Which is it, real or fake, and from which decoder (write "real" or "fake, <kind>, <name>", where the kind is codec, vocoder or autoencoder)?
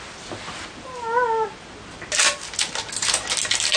real